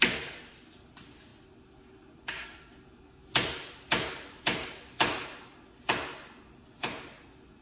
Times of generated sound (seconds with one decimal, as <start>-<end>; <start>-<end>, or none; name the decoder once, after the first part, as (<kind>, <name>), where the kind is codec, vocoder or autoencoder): none